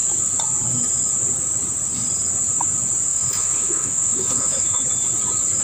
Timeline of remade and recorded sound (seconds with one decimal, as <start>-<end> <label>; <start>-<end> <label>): 0.0-3.1 recorded; 3.1-4.8 remade; 4.8-5.6 recorded